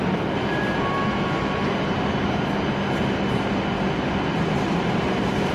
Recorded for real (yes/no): yes